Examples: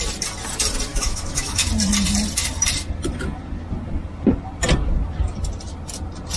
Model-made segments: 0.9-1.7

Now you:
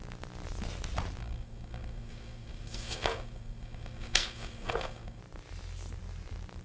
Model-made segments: 1.2-5.2